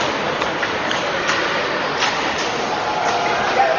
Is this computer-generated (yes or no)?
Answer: no